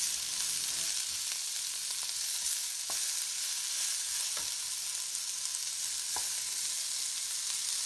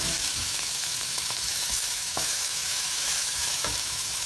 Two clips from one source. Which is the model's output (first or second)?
second